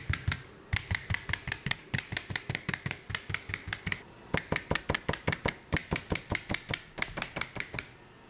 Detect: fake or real real